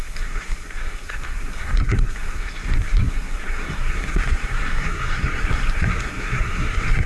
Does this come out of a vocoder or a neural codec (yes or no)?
yes